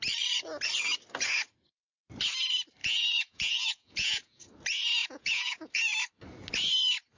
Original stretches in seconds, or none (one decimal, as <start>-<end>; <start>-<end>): 0.0-2.8; 4.4-5.0; 5.7-7.2